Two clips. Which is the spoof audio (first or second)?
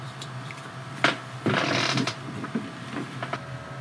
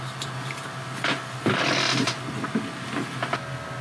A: first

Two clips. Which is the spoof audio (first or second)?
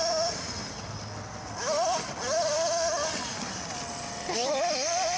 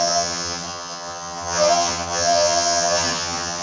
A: second